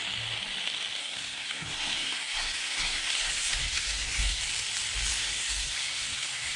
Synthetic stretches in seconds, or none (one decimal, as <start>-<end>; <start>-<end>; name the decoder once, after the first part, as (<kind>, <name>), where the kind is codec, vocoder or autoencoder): 1.0-4.4 (codec, SNAC); 5.1-6.6